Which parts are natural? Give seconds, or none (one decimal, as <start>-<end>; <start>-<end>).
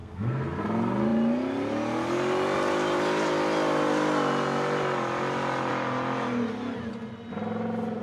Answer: 0.6-8.0